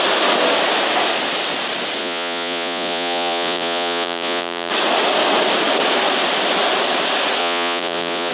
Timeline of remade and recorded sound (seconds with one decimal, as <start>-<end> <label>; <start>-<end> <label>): 0.0-2.0 recorded; 2.0-4.7 remade; 4.7-7.4 recorded; 7.4-8.3 remade